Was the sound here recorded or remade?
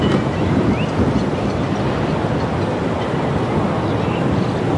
recorded